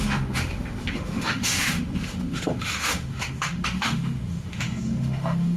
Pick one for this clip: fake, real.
fake